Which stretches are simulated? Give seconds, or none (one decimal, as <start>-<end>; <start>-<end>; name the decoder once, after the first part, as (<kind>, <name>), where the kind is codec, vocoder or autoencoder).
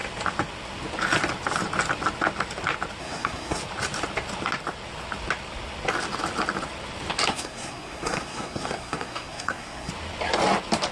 3.0-3.6 (codec, SNAC); 7.3-9.9